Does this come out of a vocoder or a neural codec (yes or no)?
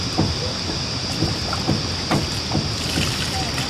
no